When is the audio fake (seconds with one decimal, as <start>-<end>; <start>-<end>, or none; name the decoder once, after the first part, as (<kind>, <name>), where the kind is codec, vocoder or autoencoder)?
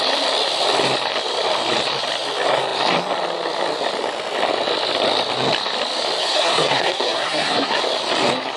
6.2-7.8 (codec, SNAC)